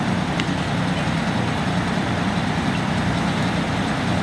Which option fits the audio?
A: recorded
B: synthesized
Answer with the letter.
B